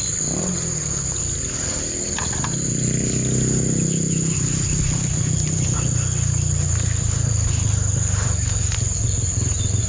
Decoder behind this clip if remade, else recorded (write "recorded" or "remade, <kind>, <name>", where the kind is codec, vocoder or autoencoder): recorded